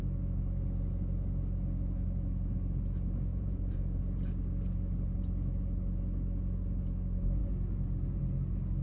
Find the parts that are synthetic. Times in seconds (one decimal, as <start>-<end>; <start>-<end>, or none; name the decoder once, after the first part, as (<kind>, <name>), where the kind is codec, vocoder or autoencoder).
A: 3.3-4.0 (vocoder, Vocos)